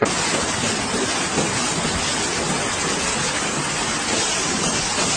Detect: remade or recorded recorded